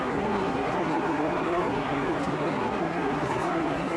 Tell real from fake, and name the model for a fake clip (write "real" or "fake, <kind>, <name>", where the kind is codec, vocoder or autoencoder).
fake, codec, SNAC